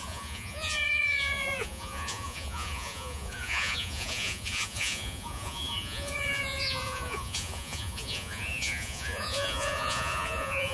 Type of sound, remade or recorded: remade